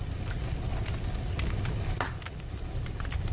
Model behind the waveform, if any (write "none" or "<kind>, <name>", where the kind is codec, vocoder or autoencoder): none